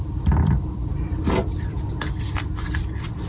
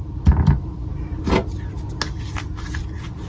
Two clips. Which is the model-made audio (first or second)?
first